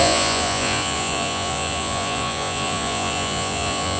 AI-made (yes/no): yes